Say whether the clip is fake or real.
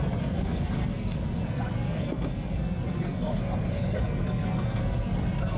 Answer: fake